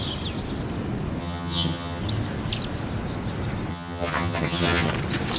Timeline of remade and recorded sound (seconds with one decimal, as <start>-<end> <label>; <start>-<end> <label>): 0.0-1.2 recorded; 1.2-2.0 remade; 2.0-3.7 recorded; 3.7-4.9 remade; 4.9-5.4 recorded